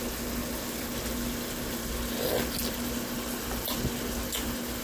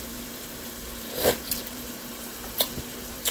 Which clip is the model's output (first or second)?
second